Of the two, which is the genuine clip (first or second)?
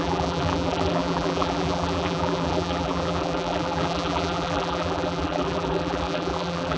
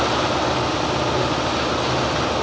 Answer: second